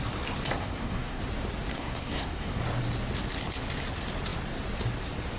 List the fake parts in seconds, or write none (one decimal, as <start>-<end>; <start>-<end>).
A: 0.6-1.2; 1.7-2.6